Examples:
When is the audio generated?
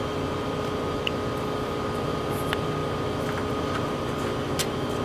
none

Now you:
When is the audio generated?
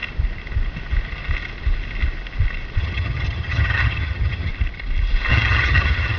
2.8-4.5 (vocoder, HiFi-GAN); 5.3-6.2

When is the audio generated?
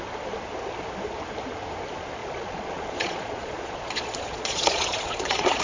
2.2-5.6 (vocoder, Vocos)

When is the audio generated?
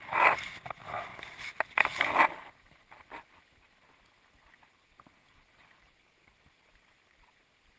none